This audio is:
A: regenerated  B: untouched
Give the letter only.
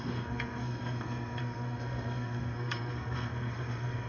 A